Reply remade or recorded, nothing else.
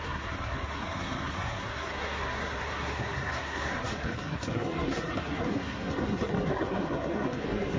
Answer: remade